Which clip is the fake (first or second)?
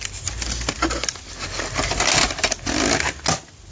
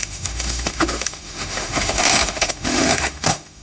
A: second